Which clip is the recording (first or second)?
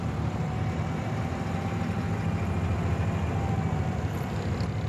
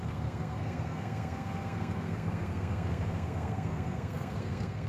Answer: first